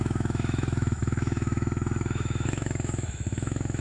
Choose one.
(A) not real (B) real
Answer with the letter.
A